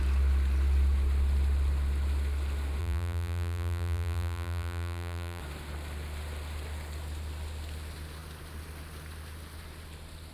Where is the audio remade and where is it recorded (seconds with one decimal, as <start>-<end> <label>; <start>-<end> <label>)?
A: 0.0-2.8 recorded; 2.8-5.4 remade; 5.4-10.3 recorded